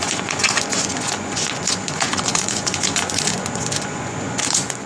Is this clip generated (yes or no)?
yes